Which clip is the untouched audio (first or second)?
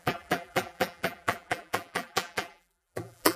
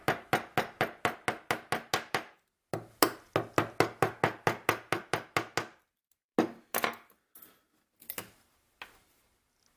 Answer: second